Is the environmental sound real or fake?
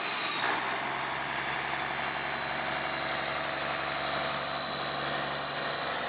real